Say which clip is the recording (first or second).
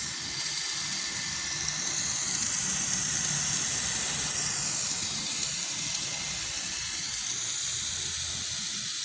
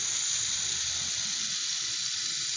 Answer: first